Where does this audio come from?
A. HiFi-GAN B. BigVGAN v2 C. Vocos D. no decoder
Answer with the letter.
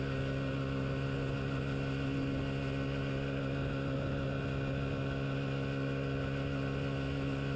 D